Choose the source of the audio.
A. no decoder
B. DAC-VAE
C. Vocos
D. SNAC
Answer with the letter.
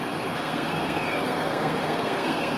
D